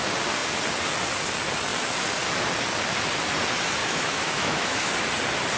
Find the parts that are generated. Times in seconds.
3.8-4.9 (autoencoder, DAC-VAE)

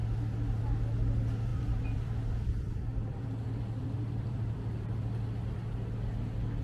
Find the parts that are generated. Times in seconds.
0.0-0.6 (vocoder, BigVGAN v2); 1.5-5.5

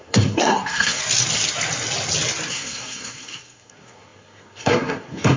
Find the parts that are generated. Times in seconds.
0.0-1.0 (codec, SNAC); 2.5-5.4

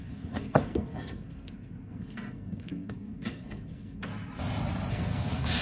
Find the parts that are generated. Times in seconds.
0.0-4.1 (codec, SNAC); 4.9-5.6

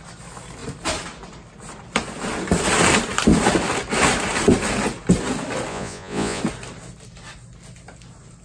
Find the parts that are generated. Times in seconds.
5.7-6.4 (vocoder, Vocos)

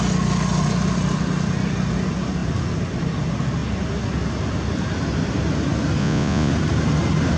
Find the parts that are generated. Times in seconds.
6.0-6.5 (vocoder, Vocos)